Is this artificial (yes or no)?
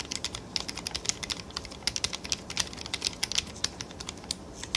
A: no